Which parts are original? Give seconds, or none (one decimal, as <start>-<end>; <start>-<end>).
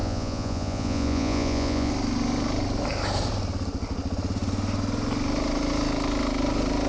1.9-6.9